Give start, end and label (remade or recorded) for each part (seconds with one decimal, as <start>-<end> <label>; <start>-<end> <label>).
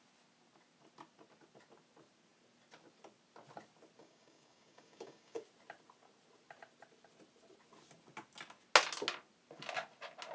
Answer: 0.0-4.0 recorded; 4.0-5.4 remade; 5.4-10.3 recorded